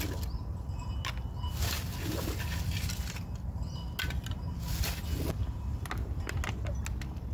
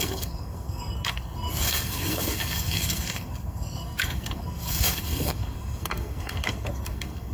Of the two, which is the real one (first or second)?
first